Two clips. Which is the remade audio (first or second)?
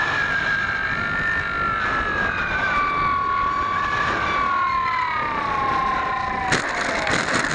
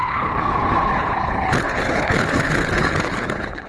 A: second